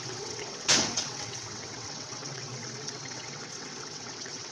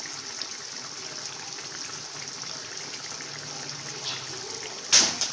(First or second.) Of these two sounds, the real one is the second